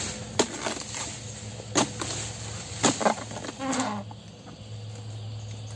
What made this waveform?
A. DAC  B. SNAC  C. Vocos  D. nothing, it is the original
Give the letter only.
D